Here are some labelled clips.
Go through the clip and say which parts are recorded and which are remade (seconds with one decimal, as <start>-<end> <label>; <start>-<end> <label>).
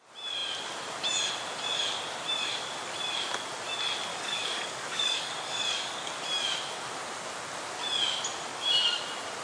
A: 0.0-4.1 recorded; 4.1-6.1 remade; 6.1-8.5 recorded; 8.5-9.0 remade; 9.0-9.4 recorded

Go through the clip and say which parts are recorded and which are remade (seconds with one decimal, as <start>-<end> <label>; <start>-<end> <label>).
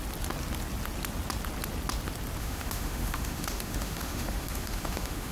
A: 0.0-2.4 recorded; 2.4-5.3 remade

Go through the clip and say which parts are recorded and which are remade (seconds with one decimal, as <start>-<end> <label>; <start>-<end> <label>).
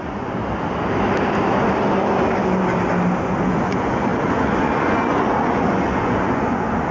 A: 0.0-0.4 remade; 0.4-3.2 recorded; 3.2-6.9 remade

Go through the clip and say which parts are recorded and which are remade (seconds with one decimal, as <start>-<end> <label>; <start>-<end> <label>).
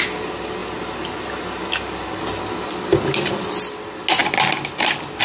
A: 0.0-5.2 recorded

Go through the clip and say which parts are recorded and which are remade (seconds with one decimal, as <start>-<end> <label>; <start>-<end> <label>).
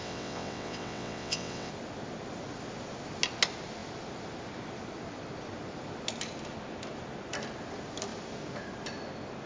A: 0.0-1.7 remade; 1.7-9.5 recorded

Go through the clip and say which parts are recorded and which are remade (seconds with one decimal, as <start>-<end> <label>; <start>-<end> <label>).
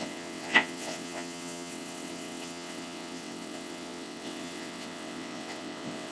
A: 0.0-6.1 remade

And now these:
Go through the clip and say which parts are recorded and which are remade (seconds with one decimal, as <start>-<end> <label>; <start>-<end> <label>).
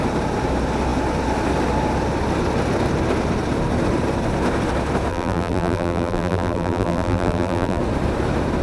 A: 0.0-5.1 recorded; 5.1-7.8 remade; 7.8-8.6 recorded